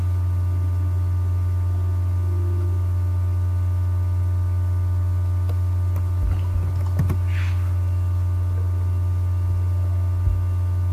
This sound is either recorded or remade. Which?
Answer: recorded